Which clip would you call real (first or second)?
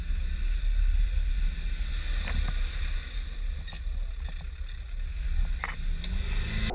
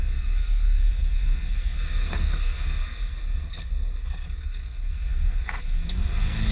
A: first